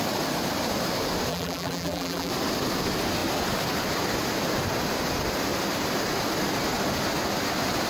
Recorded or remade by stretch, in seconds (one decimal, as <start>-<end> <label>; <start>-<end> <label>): 0.0-1.3 recorded; 1.3-2.3 remade; 2.3-7.9 recorded